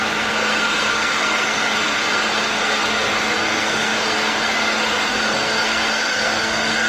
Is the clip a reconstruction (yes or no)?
yes